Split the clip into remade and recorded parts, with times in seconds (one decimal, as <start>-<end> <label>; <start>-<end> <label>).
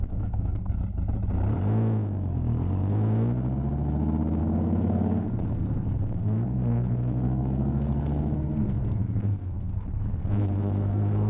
0.0-0.8 remade; 0.8-4.4 recorded; 4.4-11.3 remade